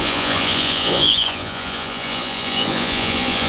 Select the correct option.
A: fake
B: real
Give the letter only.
A